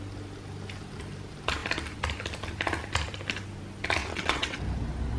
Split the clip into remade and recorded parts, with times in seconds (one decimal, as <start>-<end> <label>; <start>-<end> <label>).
0.0-4.0 recorded; 4.0-4.6 remade; 4.6-5.2 recorded